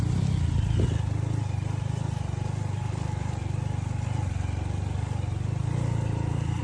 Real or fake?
real